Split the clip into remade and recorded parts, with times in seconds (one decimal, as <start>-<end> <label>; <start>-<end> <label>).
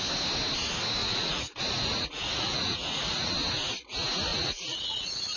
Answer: 0.0-1.0 recorded; 1.0-3.3 remade; 3.3-4.3 recorded; 4.3-5.4 remade